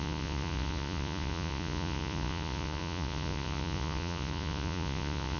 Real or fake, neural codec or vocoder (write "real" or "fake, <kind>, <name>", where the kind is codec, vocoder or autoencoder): fake, vocoder, Vocos